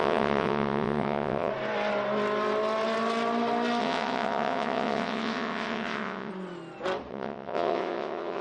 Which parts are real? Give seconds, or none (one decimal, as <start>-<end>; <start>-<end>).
1.5-3.8; 6.3-7.1